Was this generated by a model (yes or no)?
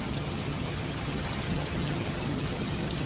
yes